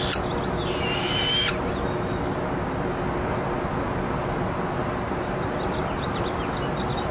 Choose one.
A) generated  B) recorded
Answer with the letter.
B